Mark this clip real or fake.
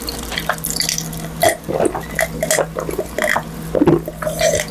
real